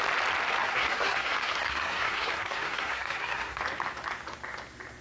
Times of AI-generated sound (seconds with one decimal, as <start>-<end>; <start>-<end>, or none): 0.6-3.6